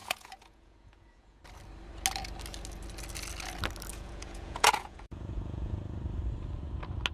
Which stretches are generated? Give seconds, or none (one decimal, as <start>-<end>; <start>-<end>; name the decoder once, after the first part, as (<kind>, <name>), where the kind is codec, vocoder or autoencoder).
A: 0.0-1.4 (vocoder, Vocos); 3.9-5.8